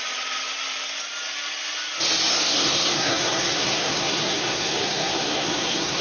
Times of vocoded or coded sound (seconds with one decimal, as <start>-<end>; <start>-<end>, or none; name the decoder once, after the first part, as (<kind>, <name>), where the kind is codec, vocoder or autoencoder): 2.3-6.0 (codec, SNAC)